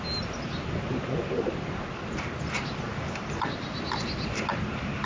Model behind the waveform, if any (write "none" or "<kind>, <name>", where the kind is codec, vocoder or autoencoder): none